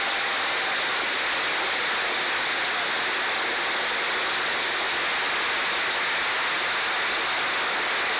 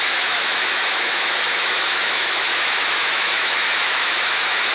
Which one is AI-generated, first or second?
second